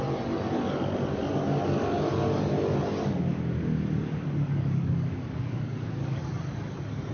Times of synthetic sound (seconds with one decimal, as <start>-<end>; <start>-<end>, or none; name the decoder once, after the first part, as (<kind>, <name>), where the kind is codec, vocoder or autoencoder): 3.3-6.2 (codec, DAC)